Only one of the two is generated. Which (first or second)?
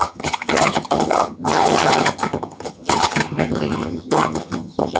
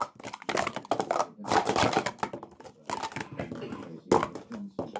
first